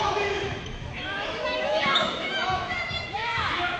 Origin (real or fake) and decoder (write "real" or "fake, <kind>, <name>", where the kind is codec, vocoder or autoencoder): fake, autoencoder, DAC-VAE